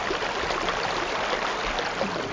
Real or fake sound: real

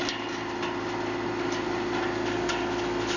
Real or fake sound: real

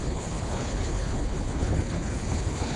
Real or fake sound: fake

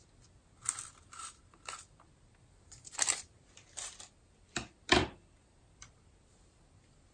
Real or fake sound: real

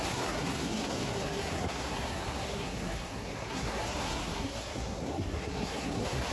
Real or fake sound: fake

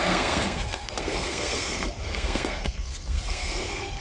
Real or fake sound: fake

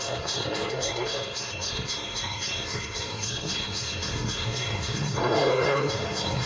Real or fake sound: fake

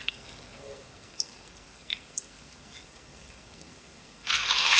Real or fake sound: fake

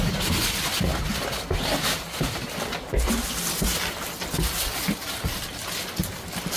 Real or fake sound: real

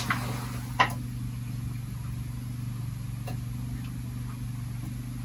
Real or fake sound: real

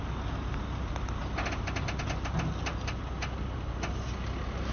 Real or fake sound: real